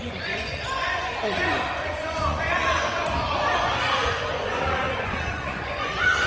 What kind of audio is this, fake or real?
fake